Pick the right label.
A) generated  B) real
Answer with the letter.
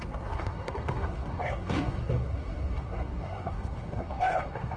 A